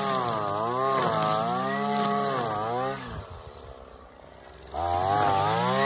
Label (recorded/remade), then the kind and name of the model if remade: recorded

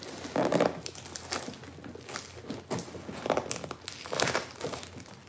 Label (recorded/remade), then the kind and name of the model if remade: recorded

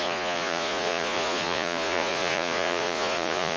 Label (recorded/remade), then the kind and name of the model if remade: remade, vocoder, Vocos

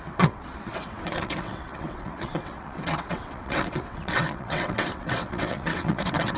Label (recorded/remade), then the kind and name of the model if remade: remade, vocoder, WaveNeXt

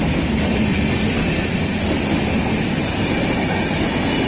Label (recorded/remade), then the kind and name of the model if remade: recorded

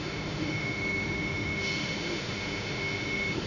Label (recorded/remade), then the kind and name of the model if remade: remade, autoencoder, DAC-VAE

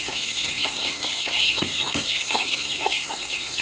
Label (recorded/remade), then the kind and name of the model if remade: remade, codec, SNAC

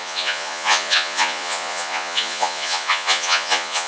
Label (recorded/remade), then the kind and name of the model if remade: remade, vocoder, Vocos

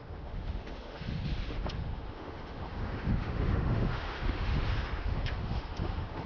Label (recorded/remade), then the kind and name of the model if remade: remade, autoencoder, DAC-VAE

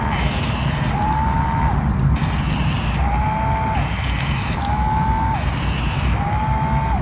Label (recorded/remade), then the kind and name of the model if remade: recorded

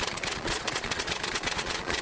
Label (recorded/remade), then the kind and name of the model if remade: remade, vocoder, Vocos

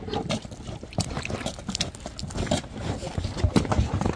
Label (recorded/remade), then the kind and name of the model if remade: recorded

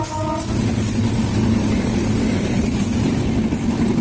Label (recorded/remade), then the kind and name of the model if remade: recorded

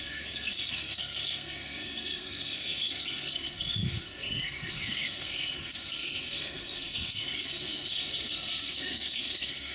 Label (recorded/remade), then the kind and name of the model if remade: remade, codec, SNAC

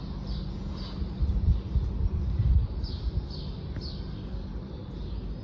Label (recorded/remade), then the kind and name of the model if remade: recorded